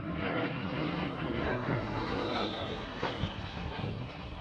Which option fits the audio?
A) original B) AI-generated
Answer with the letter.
B